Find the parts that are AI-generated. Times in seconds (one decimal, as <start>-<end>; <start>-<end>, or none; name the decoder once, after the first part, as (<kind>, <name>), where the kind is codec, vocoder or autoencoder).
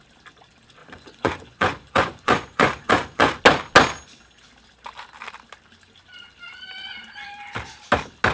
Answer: 0.8-3.4 (vocoder, Vocos)